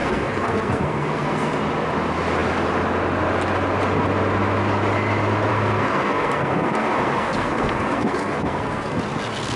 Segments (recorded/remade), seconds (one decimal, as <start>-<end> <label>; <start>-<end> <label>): 0.0-1.5 remade; 1.5-5.5 recorded; 5.5-9.0 remade; 9.0-9.6 recorded